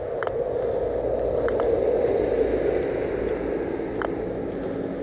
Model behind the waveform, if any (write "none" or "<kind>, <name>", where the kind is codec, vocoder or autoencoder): none